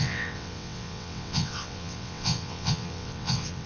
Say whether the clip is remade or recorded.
remade